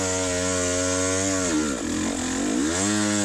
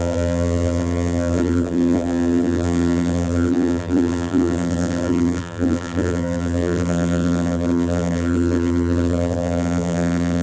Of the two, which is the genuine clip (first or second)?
first